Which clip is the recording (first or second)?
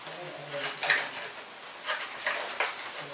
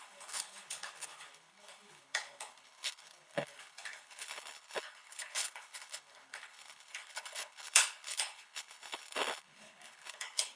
first